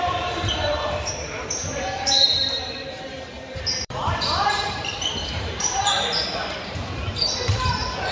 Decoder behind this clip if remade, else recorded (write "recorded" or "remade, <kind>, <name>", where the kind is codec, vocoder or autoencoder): remade, vocoder, BigVGAN v2